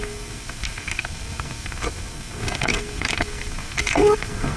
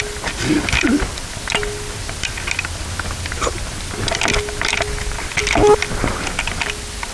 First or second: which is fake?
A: first